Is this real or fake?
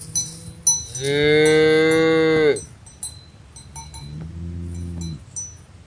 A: real